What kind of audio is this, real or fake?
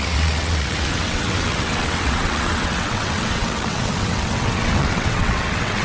fake